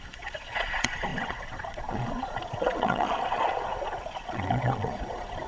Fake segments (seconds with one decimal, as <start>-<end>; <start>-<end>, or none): 0.0-5.5